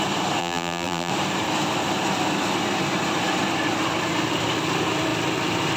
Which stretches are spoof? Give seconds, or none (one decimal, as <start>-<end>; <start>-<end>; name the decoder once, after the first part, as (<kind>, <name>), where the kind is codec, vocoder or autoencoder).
0.4-1.1 (vocoder, BigVGAN v2)